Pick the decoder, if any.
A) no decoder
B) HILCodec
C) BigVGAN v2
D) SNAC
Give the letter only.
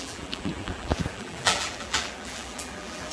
C